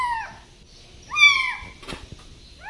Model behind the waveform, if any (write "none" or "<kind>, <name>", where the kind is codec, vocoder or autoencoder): none